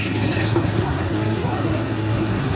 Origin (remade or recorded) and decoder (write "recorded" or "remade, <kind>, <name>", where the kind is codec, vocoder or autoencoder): remade, codec, SNAC